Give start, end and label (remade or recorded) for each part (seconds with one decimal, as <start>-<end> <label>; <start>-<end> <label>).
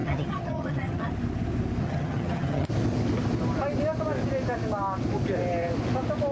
0.0-1.1 remade; 1.1-1.8 recorded; 1.8-2.7 remade; 2.7-6.3 recorded